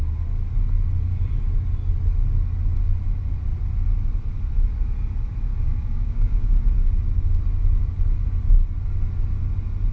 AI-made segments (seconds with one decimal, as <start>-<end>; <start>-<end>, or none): 5.5-6.6